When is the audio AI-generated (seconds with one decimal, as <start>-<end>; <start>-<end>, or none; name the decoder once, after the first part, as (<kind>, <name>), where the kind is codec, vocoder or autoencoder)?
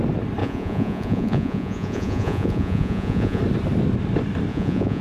0.4-3.4 (vocoder, Vocos); 4.5-5.0